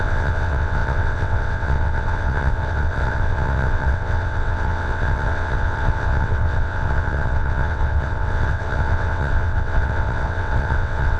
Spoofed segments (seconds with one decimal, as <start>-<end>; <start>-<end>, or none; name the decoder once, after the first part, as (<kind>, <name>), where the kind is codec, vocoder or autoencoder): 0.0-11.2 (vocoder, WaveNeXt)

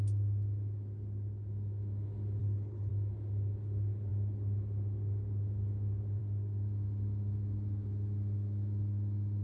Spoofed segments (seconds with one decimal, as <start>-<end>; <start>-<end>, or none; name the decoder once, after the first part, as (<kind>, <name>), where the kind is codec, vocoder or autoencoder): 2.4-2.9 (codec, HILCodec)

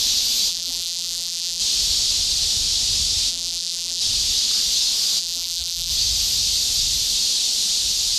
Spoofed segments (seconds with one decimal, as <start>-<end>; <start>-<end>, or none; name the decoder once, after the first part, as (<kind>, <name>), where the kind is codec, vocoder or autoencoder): 0.5-1.6 (vocoder, BigVGAN v2); 3.3-4.0; 5.2-5.9